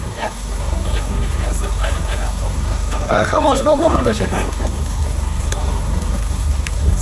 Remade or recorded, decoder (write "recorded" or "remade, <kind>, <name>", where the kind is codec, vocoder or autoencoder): remade, codec, SNAC